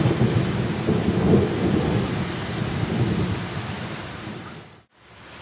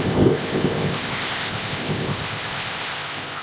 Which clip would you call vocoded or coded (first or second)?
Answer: second